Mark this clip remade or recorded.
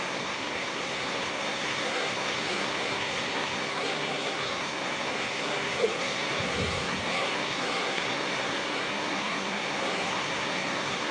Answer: remade